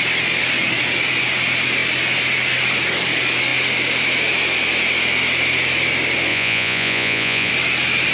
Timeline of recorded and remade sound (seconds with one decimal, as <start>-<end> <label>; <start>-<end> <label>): 0.0-6.3 recorded; 6.3-7.5 remade; 7.5-8.1 recorded